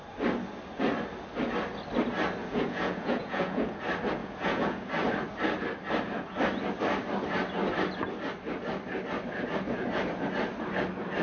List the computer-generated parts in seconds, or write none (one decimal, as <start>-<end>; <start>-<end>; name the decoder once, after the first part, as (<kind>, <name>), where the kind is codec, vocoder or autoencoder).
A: 2.4-3.8 (vocoder, Vocos); 4.2-4.9